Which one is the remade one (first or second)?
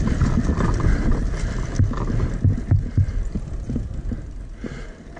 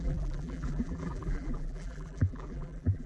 second